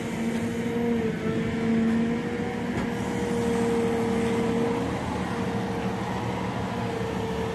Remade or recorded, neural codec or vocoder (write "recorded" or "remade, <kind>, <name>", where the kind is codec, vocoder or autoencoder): recorded